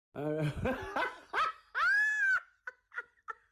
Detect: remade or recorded recorded